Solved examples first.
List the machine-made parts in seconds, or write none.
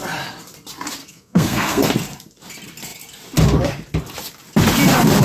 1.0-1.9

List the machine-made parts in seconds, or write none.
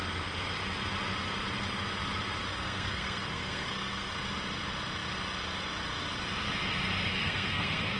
2.5-4.1; 7.1-8.0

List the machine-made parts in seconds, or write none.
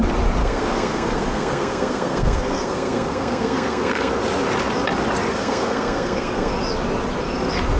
0.4-4.1; 5.3-6.5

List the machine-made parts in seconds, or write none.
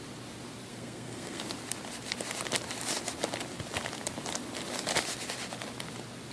0.7-1.4